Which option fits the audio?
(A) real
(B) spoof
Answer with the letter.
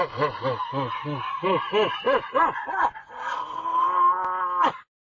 A